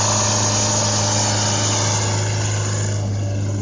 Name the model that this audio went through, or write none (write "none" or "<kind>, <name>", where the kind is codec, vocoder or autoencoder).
none